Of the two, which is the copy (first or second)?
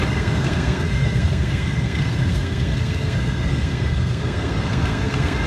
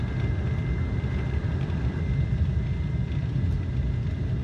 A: first